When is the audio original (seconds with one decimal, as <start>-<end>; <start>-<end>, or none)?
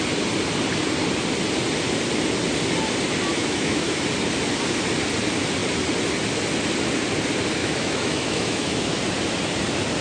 0.0-3.3; 4.0-7.6; 9.0-10.0